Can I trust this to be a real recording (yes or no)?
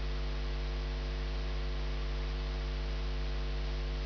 yes